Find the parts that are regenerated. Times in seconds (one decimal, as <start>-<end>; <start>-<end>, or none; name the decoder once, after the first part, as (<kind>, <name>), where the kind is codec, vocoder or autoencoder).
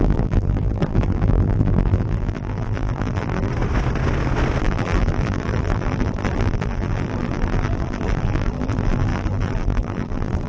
0.0-3.5 (vocoder, BigVGAN v2); 4.6-10.5